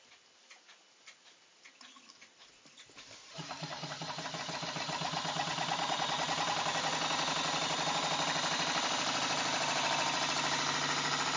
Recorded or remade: recorded